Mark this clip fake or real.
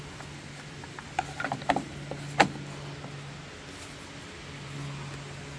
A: real